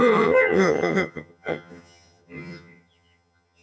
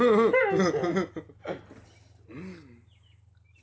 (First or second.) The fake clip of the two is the first